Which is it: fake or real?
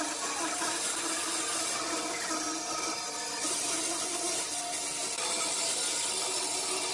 real